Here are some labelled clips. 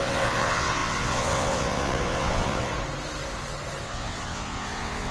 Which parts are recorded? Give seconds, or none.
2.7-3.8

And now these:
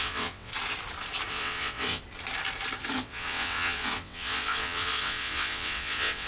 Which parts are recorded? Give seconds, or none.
0.5-1.3; 2.0-3.0

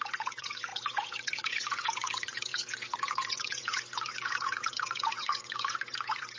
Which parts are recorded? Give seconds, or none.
none

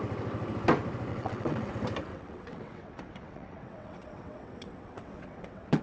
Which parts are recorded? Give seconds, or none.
0.0-1.1; 1.7-2.1

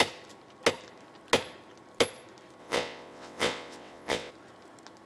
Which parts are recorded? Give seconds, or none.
0.0-2.6; 4.3-5.1

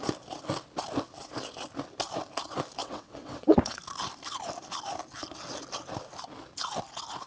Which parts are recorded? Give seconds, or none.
0.0-2.8; 3.8-7.3

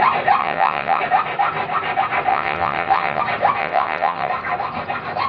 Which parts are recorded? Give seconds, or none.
0.0-0.4; 1.0-2.3; 3.2-3.6; 4.3-5.3